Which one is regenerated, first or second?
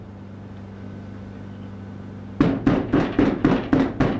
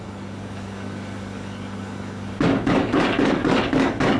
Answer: second